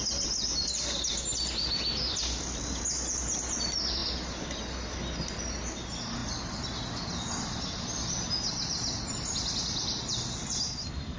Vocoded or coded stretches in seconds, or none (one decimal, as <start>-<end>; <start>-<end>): none